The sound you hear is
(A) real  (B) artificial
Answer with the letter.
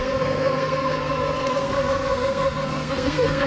B